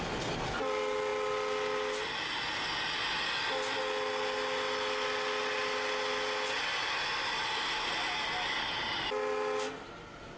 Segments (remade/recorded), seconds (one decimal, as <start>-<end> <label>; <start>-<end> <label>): 0.0-10.4 recorded